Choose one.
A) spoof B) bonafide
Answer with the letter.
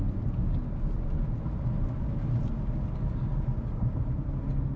B